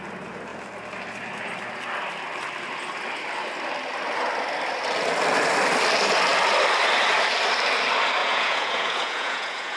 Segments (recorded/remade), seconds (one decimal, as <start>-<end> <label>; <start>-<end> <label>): 0.0-8.2 recorded; 8.2-9.8 remade